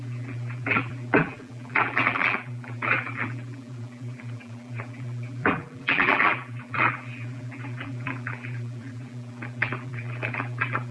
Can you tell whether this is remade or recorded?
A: remade